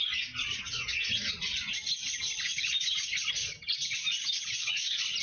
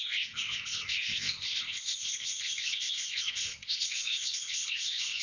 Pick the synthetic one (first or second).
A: second